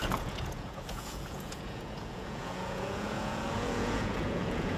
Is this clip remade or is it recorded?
remade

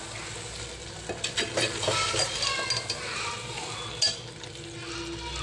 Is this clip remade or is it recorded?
recorded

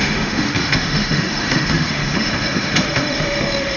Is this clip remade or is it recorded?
remade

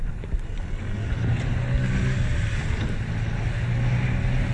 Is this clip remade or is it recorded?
recorded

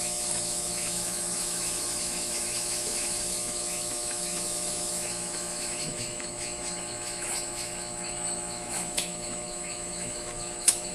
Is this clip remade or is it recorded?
remade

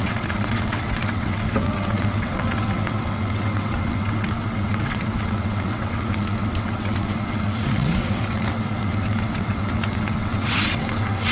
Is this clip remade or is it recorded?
remade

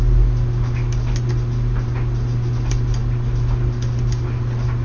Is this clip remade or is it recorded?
recorded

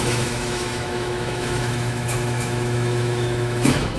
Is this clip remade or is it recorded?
remade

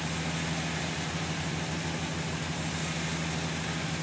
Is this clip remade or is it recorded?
recorded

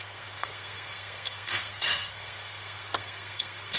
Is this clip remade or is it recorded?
remade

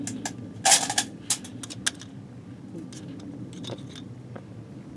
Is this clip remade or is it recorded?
recorded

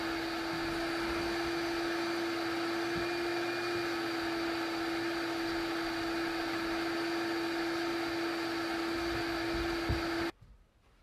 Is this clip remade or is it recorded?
recorded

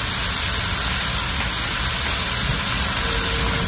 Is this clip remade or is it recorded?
recorded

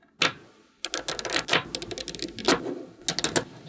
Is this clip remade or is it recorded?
recorded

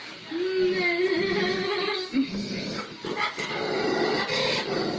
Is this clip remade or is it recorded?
recorded